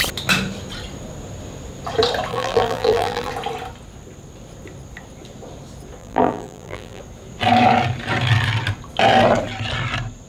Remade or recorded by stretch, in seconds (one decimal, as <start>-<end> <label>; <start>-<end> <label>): 0.0-2.3 recorded; 2.3-3.3 remade; 3.3-6.0 recorded; 6.0-7.0 remade; 7.0-10.3 recorded